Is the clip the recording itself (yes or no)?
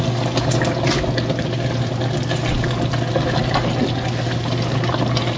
yes